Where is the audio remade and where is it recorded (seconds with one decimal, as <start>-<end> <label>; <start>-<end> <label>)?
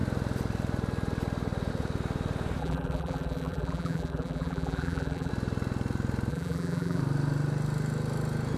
0.0-2.6 recorded; 2.6-5.3 remade; 5.3-6.3 recorded; 6.3-7.0 remade; 7.0-8.6 recorded